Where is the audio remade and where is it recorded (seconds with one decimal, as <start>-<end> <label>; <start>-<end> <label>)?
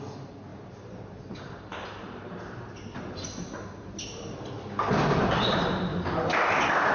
0.0-0.5 recorded; 0.5-4.3 remade; 4.3-6.9 recorded